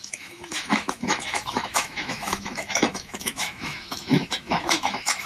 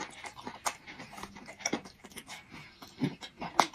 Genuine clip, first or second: second